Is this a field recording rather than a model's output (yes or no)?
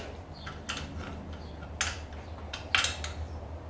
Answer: yes